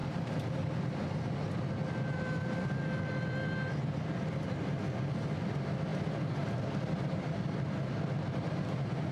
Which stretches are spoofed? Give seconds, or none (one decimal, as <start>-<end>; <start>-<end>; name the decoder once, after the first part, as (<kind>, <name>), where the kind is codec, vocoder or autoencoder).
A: 0.0-0.8 (vocoder, BigVGAN v2); 5.9-7.4